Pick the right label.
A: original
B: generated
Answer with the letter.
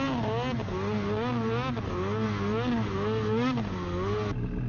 A